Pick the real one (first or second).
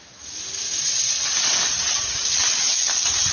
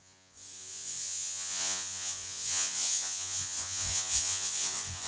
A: first